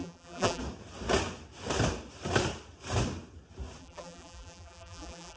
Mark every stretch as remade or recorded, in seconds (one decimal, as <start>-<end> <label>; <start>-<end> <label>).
0.0-0.6 remade; 0.6-3.8 recorded; 3.8-5.4 remade

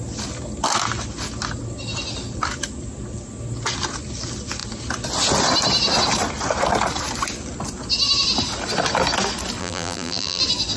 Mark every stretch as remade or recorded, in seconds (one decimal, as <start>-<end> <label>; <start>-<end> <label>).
0.0-9.6 recorded; 9.6-10.4 remade; 10.4-10.8 recorded

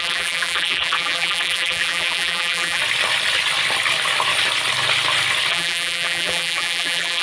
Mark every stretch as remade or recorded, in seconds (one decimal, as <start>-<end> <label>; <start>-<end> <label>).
0.0-2.8 remade; 2.8-5.5 recorded; 5.5-7.2 remade

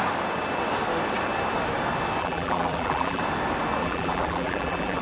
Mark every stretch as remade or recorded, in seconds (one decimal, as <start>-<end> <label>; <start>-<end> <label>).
0.0-2.2 recorded; 2.2-3.2 remade; 3.2-3.8 recorded; 3.8-5.0 remade

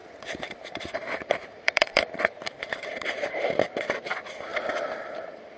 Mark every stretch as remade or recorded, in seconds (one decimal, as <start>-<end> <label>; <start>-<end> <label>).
0.0-3.4 remade; 3.4-5.6 recorded

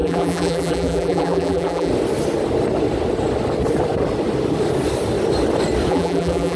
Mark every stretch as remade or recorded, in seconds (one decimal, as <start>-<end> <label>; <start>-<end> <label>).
0.0-1.9 remade; 1.9-5.9 recorded; 5.9-6.6 remade

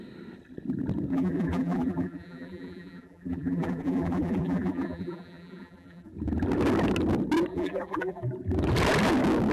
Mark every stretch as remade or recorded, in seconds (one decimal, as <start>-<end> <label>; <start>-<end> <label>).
0.0-1.1 recorded; 1.1-6.1 remade; 6.1-7.5 recorded; 7.5-8.3 remade; 8.3-9.5 recorded